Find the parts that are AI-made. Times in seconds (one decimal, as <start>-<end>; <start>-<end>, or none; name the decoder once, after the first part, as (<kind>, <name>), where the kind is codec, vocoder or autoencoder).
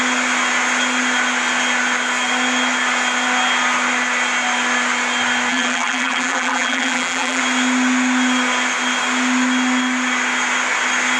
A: 5.5-7.4 (vocoder, BigVGAN v2)